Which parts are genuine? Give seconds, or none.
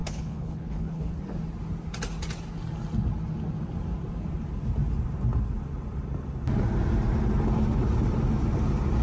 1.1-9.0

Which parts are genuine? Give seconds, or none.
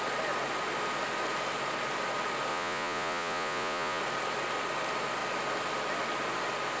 0.0-2.5; 4.0-6.8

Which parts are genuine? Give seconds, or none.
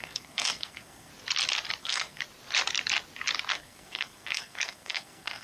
1.1-1.8; 2.2-3.5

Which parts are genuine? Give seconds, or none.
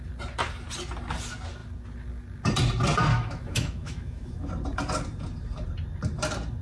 0.0-3.1; 4.5-6.6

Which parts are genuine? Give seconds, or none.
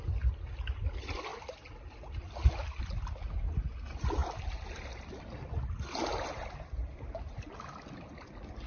0.0-8.7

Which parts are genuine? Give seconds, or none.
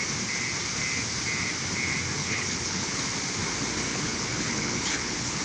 0.0-2.2; 3.0-3.9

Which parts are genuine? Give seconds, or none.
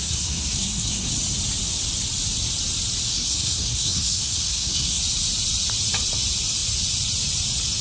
1.1-3.1; 5.0-7.8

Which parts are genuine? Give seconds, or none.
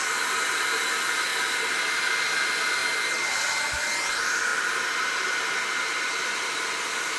1.3-2.2; 2.8-4.1; 4.5-6.5